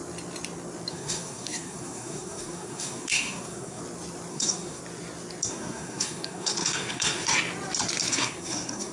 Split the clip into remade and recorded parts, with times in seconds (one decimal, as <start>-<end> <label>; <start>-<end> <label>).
0.0-0.9 recorded; 0.9-3.8 remade; 3.8-4.3 recorded; 4.3-4.8 remade; 4.8-5.5 recorded; 5.5-7.3 remade; 7.3-8.1 recorded; 8.1-8.9 remade